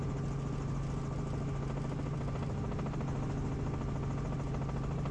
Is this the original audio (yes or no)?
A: yes